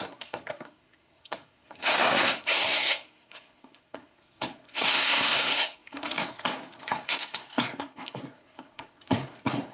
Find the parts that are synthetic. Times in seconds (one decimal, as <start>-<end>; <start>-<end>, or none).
0.0-9.7